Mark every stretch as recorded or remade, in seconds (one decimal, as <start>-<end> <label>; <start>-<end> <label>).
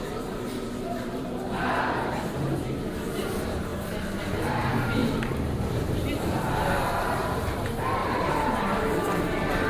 0.0-3.7 remade; 3.7-4.2 recorded; 4.2-5.0 remade; 5.0-5.7 recorded; 5.7-9.7 remade